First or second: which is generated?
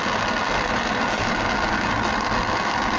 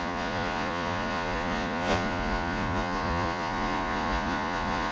second